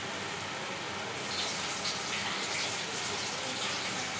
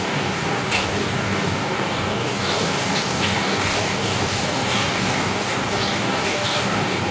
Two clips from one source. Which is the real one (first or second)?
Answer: first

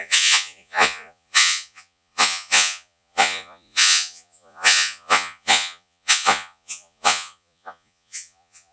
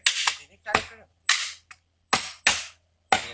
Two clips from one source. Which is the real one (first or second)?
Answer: second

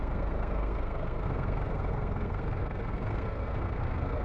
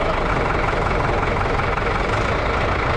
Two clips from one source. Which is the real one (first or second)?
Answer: second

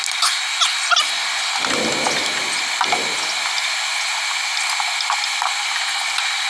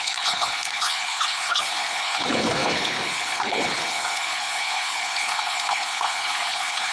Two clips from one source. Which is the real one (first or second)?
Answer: first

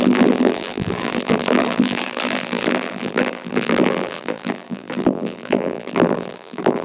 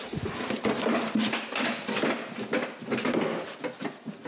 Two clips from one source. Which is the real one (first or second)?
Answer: second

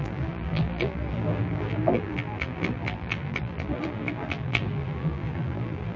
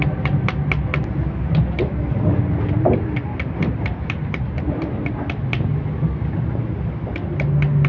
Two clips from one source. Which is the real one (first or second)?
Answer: second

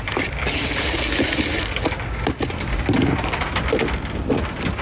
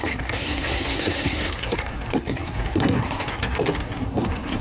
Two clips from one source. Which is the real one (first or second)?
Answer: first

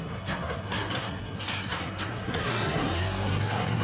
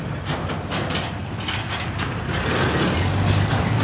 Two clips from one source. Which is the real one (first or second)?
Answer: second